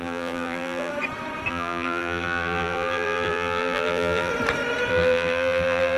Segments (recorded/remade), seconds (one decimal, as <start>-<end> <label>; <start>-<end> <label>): 0.0-0.9 remade; 0.9-1.5 recorded; 1.5-4.3 remade; 4.3-4.9 recorded; 4.9-6.0 remade

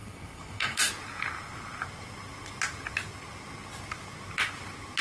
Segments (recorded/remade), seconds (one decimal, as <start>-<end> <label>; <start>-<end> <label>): 0.0-0.9 remade; 0.9-5.0 recorded

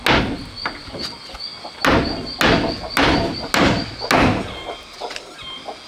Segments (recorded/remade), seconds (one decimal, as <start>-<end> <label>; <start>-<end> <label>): 0.0-5.9 recorded